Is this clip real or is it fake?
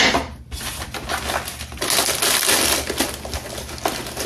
real